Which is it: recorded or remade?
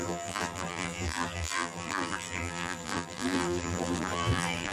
remade